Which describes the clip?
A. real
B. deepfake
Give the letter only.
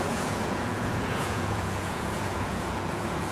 B